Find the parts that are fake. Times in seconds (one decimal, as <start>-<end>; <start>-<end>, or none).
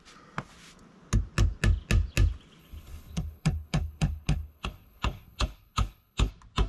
2.6-6.3